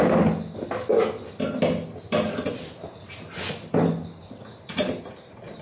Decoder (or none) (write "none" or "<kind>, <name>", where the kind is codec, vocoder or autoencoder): none